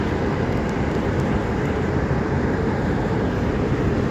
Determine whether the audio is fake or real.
fake